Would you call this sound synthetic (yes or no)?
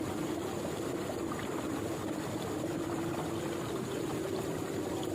no